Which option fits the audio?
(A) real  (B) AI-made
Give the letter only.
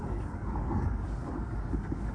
B